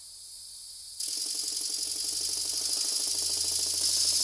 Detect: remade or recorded recorded